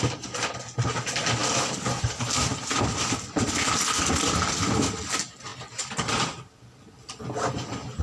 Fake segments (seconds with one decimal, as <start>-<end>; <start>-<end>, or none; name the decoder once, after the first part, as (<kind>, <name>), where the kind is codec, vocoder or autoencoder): none